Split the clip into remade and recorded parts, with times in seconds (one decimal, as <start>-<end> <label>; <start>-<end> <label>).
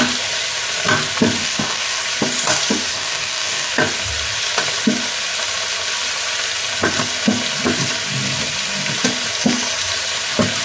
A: 0.0-1.4 recorded; 1.4-2.0 remade; 2.0-2.9 recorded; 2.9-3.7 remade; 3.7-10.6 recorded